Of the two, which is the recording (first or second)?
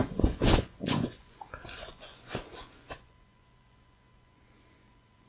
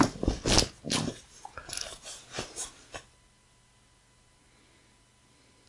second